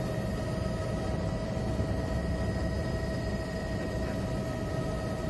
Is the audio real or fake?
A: real